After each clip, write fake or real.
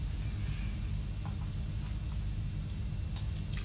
real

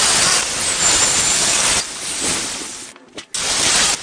real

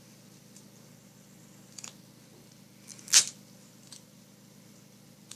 real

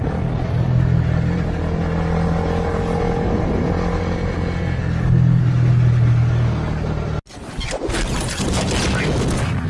real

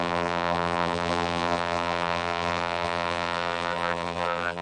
fake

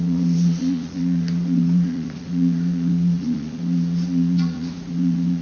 fake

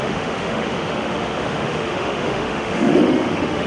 fake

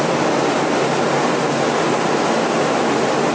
real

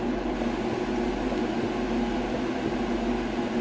real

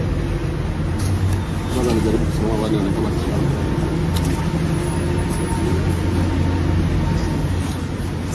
real